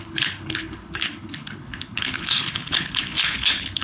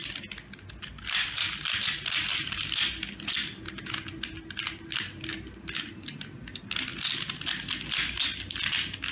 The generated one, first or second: first